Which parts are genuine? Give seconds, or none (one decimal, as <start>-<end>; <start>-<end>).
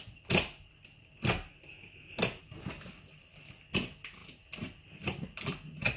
0.0-6.0